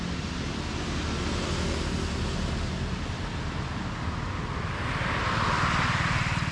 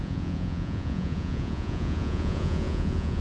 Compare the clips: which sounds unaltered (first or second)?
first